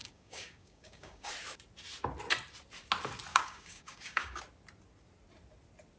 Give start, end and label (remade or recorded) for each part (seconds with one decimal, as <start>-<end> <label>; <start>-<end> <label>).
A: 0.0-1.3 remade; 1.3-3.3 recorded; 3.3-4.4 remade; 4.4-6.0 recorded